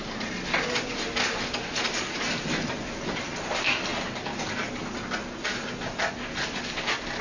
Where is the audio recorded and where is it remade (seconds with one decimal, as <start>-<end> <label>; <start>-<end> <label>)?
0.0-7.2 recorded